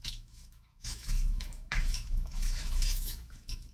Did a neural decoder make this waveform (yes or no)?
yes